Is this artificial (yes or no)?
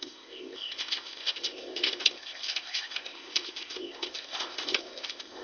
yes